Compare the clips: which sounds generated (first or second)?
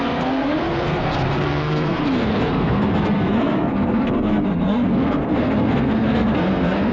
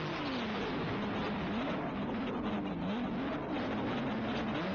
first